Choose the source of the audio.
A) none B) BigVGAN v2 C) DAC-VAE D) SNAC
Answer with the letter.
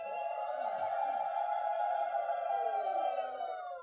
B